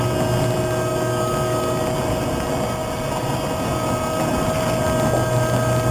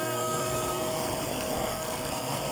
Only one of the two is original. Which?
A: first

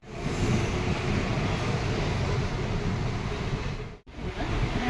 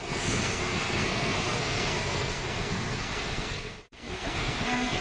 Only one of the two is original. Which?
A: first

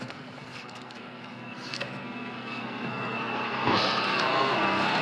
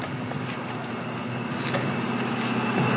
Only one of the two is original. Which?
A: second